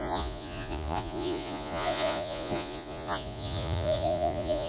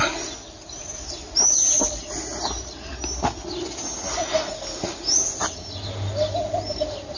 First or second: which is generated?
first